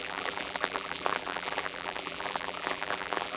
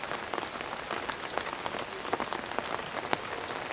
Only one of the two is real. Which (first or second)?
second